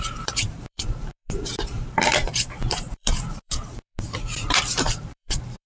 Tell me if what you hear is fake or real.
fake